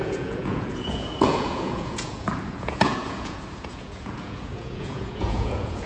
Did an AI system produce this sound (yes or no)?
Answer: yes